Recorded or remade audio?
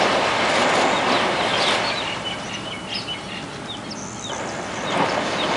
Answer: recorded